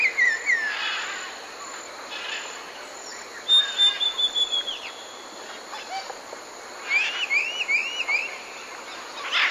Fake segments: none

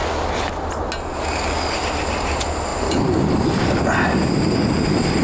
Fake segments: 2.7-3.6 (vocoder, BigVGAN v2)

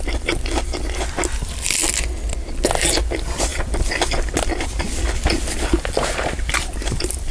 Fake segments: none

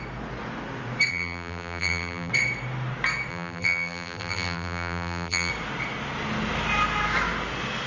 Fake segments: 1.1-2.3 (vocoder, BigVGAN v2); 3.3-5.5